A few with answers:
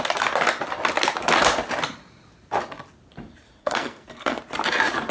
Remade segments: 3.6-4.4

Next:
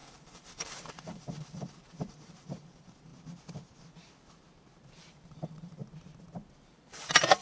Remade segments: 0.0-3.1; 5.0-5.8; 6.7-7.4

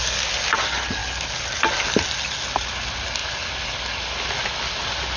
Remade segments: none

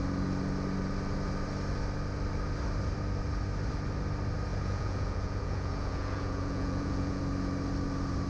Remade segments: 4.5-7.2

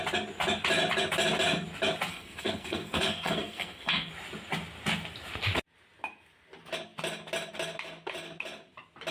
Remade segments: 2.1-4.1

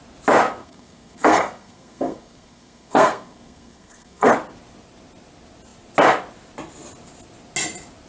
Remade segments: 0.6-4.3

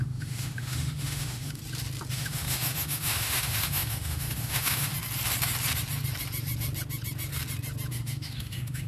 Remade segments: 0.0-1.6; 2.1-4.9; 7.9-8.9